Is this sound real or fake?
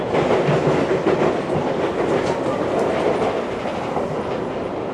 real